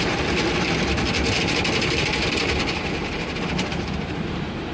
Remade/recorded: recorded